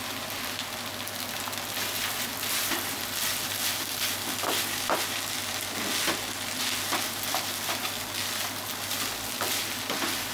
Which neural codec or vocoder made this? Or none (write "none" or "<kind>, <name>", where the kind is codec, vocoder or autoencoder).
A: none